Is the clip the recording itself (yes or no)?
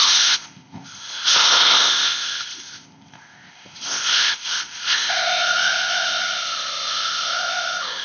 no